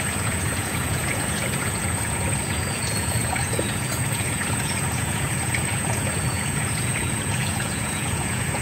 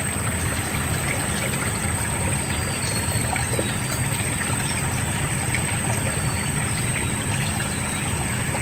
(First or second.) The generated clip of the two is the first